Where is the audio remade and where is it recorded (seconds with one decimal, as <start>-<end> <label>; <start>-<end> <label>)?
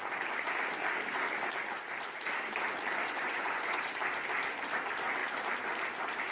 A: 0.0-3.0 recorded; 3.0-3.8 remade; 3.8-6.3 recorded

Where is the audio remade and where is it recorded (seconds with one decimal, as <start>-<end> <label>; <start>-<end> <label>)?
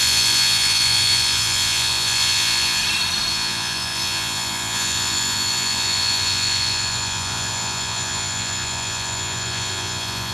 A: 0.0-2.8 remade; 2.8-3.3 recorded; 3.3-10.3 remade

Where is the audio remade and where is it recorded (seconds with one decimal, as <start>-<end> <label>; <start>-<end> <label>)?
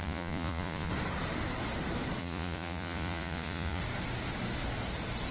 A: 0.0-0.9 remade; 0.9-2.2 recorded; 2.2-3.8 remade; 3.8-5.3 recorded